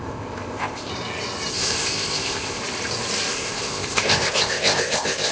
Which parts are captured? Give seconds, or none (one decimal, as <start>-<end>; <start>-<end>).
0.9-1.5; 2.6-3.3